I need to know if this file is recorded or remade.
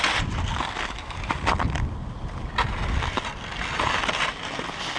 recorded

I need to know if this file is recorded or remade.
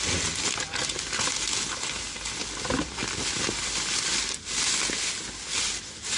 recorded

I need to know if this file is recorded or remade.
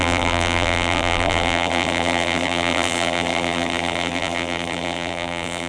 remade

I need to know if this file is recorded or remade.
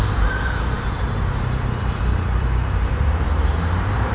remade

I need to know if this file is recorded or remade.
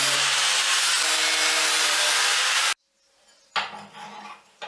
recorded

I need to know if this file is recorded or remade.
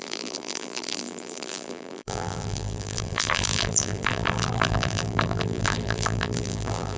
remade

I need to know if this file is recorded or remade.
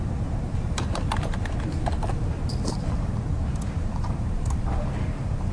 remade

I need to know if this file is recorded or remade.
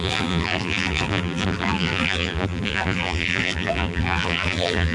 remade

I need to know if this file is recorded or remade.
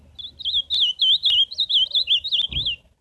recorded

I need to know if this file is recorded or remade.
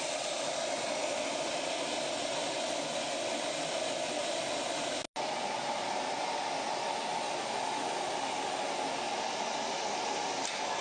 recorded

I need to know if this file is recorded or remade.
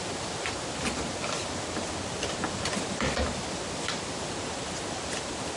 recorded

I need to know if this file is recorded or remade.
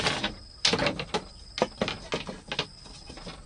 recorded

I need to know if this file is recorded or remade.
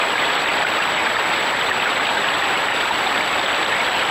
recorded